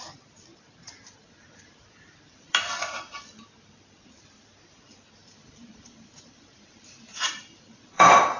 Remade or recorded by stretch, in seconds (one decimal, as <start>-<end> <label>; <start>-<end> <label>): 0.0-0.5 recorded; 0.5-2.6 remade; 2.6-5.2 recorded; 5.2-8.4 remade